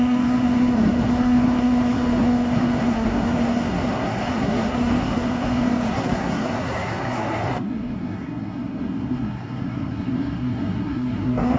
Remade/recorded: remade